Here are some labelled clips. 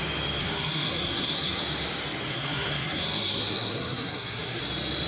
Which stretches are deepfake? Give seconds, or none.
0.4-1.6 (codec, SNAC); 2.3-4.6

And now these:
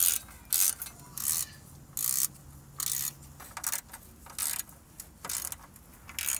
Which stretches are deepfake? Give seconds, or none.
none